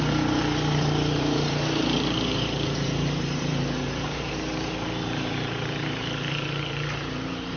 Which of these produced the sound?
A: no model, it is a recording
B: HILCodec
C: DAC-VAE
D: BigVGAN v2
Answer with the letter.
D